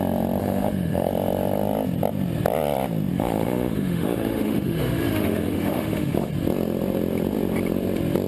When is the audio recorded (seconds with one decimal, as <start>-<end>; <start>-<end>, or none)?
0.0-0.4; 1.1-3.1; 6.3-8.3